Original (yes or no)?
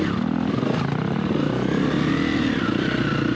yes